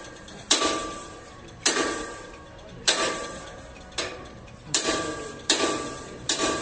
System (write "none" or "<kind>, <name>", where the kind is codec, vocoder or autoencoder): vocoder, BigVGAN v2